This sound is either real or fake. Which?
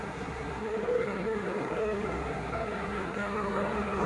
fake